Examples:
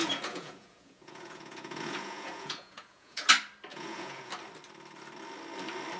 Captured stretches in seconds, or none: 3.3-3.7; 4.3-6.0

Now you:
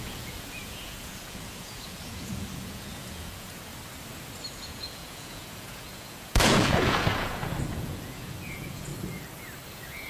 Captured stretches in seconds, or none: 3.7-4.5; 8.9-9.7

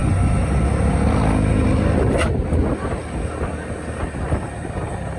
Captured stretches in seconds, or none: 0.0-5.2

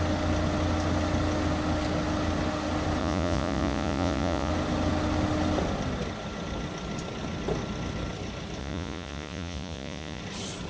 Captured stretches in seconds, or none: 0.0-3.0; 4.5-8.6; 10.2-10.7